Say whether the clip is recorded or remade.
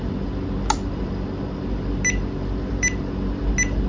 recorded